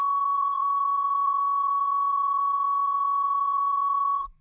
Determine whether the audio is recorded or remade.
remade